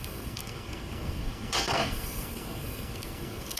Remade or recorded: remade